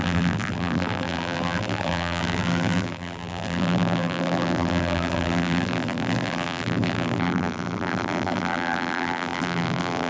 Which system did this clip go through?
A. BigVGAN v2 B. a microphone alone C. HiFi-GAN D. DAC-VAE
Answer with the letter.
A